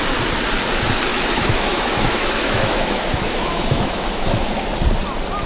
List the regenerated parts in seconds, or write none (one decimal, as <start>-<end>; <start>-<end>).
1.1-4.4